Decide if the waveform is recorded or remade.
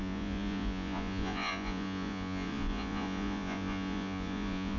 remade